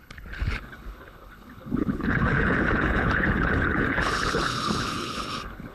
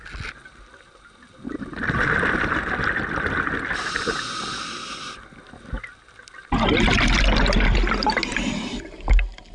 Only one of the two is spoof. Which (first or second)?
first